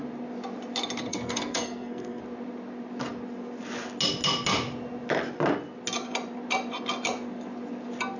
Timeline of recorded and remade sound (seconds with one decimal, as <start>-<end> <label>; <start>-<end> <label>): 0.0-1.1 recorded; 1.1-2.2 remade; 2.2-8.2 recorded